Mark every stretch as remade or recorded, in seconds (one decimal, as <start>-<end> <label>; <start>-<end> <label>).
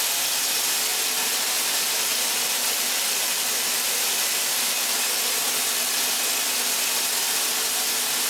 0.0-8.3 recorded